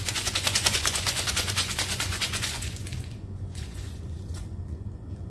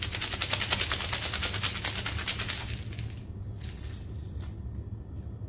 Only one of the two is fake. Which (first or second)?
first